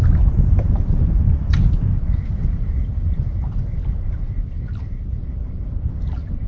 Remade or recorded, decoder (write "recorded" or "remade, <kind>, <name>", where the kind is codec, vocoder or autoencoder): recorded